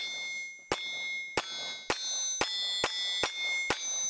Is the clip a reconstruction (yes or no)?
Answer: no